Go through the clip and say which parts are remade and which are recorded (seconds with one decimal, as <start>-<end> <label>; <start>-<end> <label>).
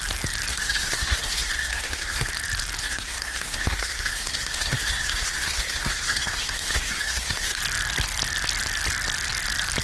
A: 0.0-0.5 recorded; 0.5-2.3 remade; 2.3-2.8 recorded; 2.8-7.6 remade; 7.6-9.8 recorded